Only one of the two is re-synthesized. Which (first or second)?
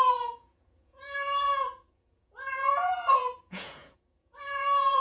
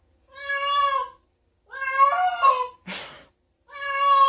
first